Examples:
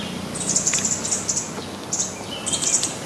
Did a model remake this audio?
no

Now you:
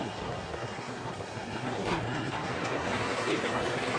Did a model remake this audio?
yes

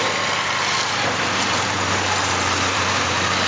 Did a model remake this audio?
yes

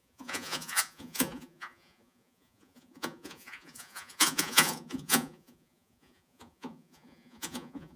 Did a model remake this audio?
yes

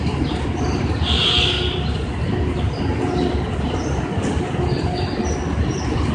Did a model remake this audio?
no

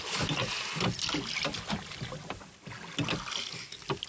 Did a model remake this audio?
no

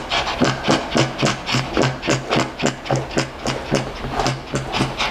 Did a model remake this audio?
no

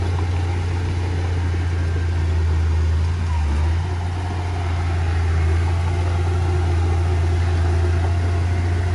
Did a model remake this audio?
no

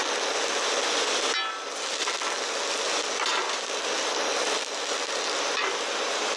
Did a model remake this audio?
no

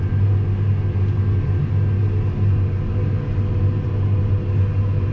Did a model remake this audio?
no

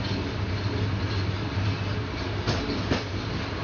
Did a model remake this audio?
no